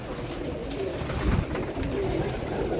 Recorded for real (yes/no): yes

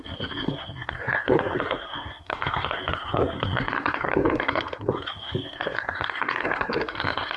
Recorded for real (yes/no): no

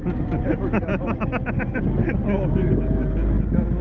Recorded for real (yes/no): yes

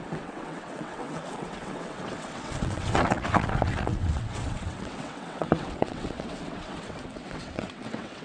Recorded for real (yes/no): no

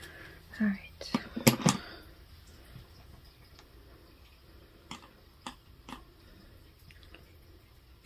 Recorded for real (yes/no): yes